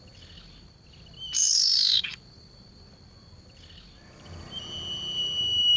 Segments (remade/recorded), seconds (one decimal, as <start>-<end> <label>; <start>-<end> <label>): 0.0-5.8 recorded